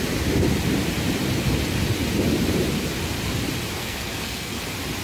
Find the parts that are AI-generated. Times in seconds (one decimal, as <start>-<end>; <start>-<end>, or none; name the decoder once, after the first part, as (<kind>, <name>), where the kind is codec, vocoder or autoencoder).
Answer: 3.8-4.6 (codec, SNAC)